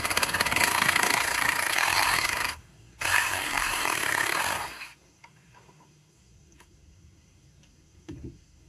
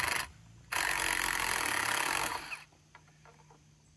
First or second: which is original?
second